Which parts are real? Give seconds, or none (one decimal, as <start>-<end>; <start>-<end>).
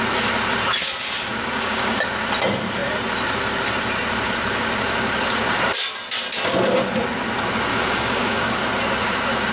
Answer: 0.0-1.3; 2.0-7.7; 8.6-9.5